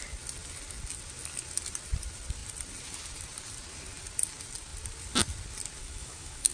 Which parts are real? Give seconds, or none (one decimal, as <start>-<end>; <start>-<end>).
0.0-5.8